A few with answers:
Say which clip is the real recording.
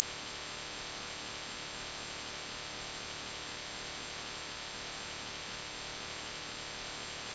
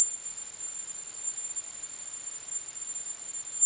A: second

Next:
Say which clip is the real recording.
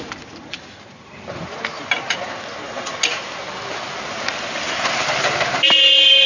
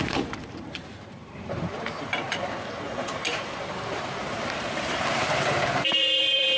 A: first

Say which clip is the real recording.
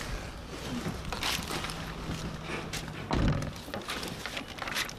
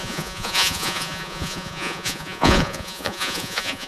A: first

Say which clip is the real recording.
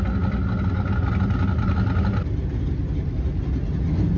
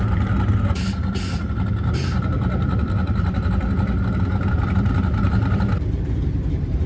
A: first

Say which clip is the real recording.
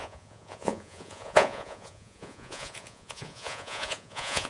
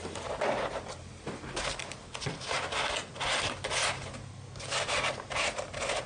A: second